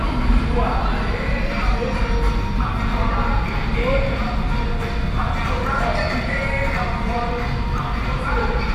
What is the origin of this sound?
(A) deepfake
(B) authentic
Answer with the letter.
B